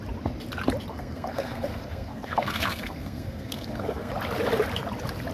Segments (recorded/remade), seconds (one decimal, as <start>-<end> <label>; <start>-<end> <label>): 0.0-0.9 recorded; 0.9-4.1 remade; 4.1-5.3 recorded